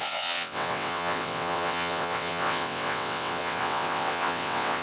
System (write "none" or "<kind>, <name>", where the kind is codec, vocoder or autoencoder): vocoder, WaveNeXt